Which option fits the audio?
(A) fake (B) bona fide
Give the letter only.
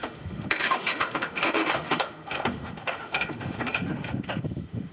A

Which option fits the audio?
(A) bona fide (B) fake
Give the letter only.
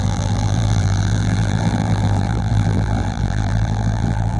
B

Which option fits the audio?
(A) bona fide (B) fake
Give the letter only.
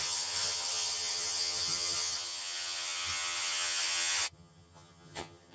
B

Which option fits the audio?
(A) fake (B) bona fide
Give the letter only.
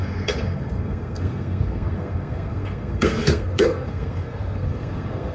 A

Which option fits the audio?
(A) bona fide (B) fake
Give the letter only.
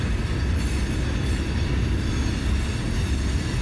A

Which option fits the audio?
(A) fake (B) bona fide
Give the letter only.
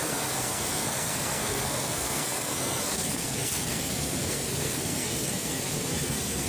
A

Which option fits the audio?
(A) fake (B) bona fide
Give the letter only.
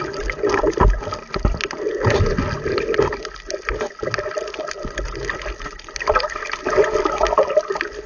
B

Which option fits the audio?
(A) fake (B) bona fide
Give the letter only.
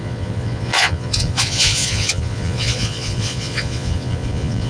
A